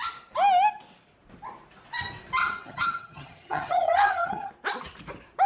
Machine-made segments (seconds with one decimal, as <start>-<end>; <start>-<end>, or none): 2.4-4.5